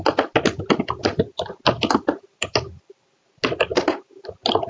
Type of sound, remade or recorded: recorded